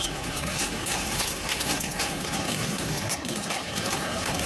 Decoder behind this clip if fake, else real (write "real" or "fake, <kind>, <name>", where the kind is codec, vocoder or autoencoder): fake, codec, SNAC